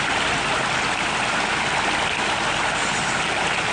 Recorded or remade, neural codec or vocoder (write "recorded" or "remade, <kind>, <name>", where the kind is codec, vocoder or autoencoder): recorded